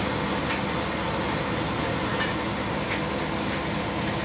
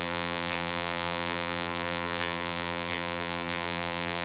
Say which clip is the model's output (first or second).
second